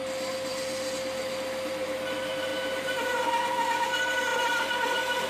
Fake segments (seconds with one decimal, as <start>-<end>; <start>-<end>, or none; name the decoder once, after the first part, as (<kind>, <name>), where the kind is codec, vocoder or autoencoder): 2.5-3.3 (vocoder, BigVGAN v2); 4.3-5.3